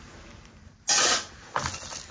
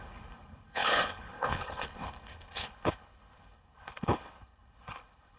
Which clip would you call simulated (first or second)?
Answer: second